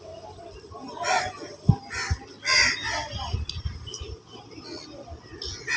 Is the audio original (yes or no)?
yes